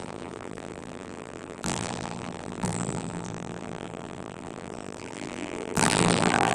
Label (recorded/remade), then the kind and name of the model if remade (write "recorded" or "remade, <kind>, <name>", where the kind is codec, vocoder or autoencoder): remade, vocoder, BigVGAN v2